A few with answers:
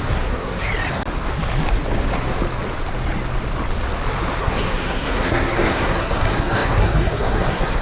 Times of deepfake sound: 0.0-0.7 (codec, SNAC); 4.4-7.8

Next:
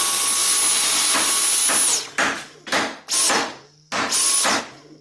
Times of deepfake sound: none

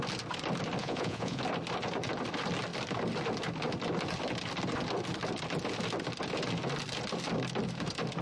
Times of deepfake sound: 0.8-1.4 (vocoder, Vocos)

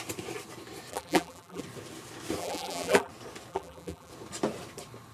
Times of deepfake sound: 0.9-1.6 (vocoder, BigVGAN v2); 2.4-3.1; 3.5-4.1

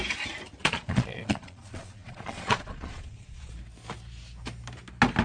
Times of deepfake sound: 0.6-3.5 (vocoder, Vocos)

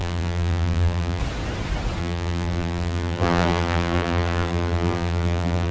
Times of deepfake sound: 0.0-1.2 (vocoder, BigVGAN v2); 2.0-5.7